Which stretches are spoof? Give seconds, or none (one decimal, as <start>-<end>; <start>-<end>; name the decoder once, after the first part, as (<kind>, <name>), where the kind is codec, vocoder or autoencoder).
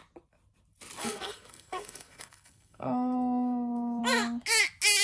1.0-4.0 (codec, SNAC)